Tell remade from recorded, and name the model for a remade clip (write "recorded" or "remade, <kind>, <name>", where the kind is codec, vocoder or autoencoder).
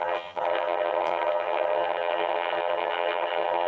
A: remade, vocoder, HiFi-GAN